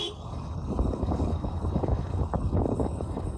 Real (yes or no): no